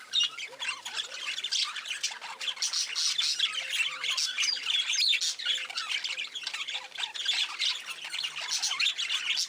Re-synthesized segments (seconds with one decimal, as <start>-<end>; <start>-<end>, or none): none